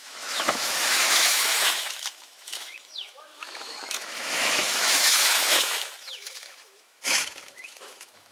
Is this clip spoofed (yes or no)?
yes